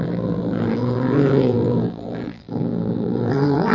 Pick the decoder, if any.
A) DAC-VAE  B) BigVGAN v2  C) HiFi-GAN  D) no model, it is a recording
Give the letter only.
B